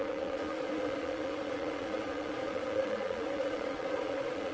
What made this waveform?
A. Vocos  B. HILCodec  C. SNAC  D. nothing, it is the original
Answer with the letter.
A